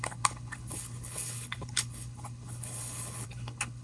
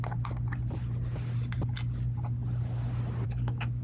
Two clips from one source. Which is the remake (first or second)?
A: first